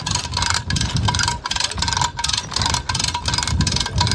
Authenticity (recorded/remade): recorded